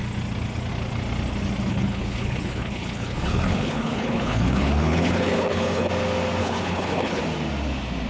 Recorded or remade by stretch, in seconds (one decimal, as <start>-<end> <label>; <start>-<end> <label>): 0.0-1.7 recorded; 1.7-5.9 remade; 5.9-6.4 recorded; 6.4-7.2 remade; 7.2-8.1 recorded